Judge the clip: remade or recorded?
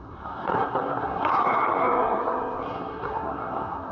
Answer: remade